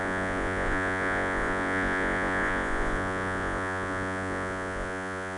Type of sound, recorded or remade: remade